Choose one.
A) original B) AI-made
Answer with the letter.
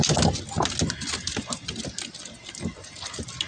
A